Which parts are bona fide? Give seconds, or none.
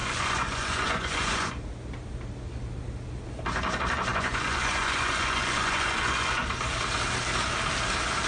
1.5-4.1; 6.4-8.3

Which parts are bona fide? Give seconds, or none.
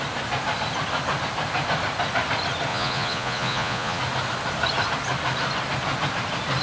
0.0-2.7; 4.0-6.6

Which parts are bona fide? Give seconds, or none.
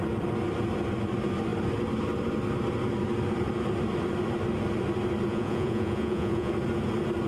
0.0-5.3; 6.5-7.3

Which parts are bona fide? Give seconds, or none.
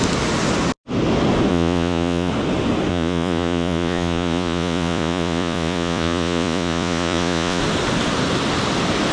0.0-1.5; 2.3-2.9; 7.6-9.1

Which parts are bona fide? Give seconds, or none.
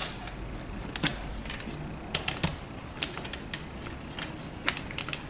0.0-5.3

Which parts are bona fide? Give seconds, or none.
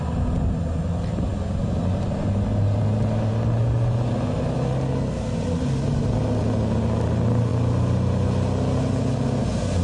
0.0-9.8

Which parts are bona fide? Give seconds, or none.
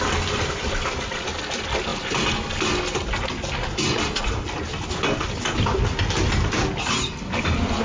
0.0-7.8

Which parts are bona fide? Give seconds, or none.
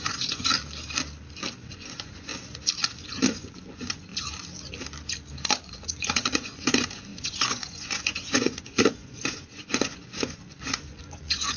0.5-1.7; 2.3-3.0; 4.1-5.6